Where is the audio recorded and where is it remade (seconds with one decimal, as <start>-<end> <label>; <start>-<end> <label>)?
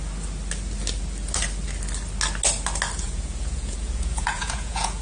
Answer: 0.0-3.0 recorded; 3.0-5.0 remade